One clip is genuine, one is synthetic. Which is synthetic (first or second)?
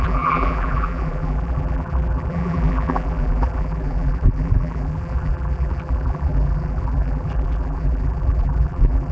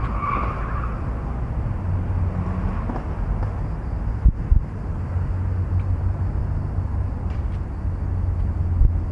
first